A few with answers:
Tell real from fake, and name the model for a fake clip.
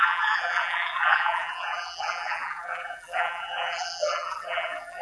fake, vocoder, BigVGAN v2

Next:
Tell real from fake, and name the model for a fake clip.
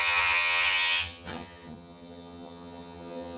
fake, vocoder, HiFi-GAN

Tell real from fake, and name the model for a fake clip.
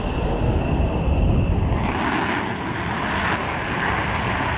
real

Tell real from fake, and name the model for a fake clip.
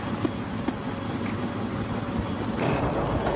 real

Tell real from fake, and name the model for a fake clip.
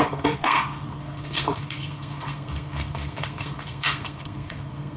fake, codec, SNAC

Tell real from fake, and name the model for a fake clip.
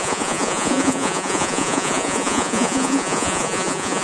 fake, vocoder, Vocos